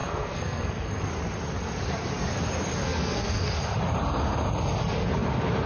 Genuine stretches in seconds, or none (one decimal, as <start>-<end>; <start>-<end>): 1.0-2.8; 3.4-5.7